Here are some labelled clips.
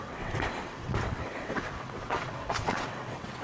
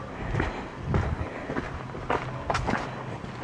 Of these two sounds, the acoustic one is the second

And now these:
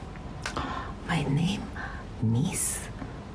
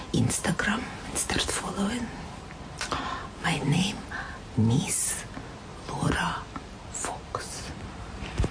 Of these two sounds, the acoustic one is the first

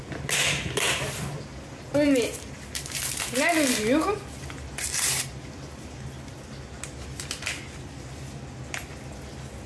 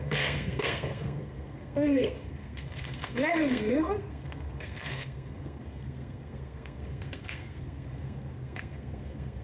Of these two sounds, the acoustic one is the first